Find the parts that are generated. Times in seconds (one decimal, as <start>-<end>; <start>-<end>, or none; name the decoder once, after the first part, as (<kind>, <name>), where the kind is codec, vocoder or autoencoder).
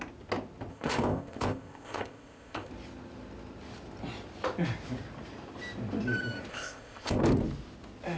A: 0.7-2.7 (codec, ZipCodec); 6.5-7.2